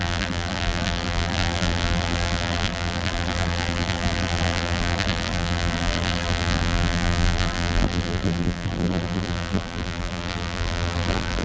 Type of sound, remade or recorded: remade